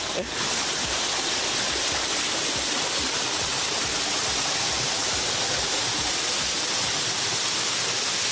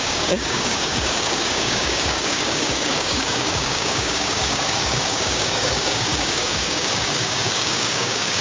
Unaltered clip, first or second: first